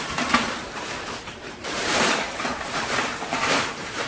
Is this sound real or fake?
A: fake